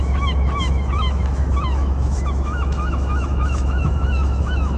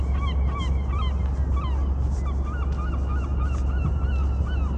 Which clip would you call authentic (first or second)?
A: second